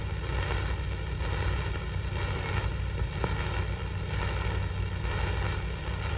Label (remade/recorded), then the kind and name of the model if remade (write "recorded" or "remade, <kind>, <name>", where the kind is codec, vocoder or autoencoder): recorded